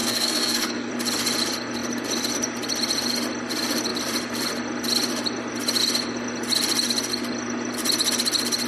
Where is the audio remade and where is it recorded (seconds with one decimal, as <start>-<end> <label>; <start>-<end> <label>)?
0.0-0.9 remade; 0.9-8.7 recorded

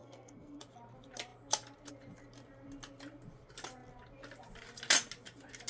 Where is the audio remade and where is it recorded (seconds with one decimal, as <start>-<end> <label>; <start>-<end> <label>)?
0.0-0.6 remade; 0.6-5.7 recorded

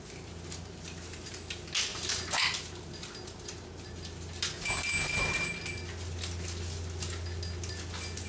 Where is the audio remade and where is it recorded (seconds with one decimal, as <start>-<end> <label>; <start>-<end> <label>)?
0.0-8.3 recorded

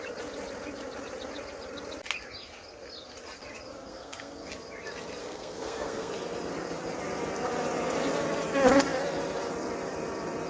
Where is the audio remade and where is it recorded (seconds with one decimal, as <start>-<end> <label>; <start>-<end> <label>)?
0.0-3.9 recorded; 3.9-4.5 remade; 4.5-5.2 recorded; 5.2-6.1 remade; 6.1-10.5 recorded

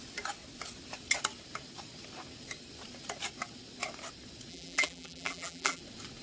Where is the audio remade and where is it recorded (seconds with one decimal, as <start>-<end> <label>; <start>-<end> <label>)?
0.0-4.5 recorded; 4.5-5.8 remade; 5.8-6.2 recorded

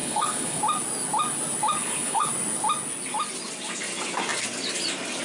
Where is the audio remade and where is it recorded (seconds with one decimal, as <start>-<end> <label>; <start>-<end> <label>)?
0.0-0.6 remade; 0.6-1.8 recorded; 1.8-2.3 remade; 2.3-5.2 recorded